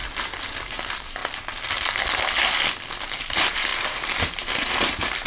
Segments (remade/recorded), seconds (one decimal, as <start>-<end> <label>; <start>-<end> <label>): 0.0-0.7 recorded; 0.7-1.2 remade; 1.2-3.2 recorded; 3.2-5.3 remade